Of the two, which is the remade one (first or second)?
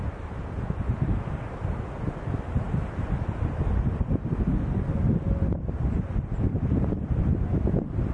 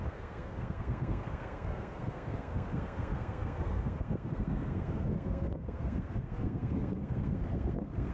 second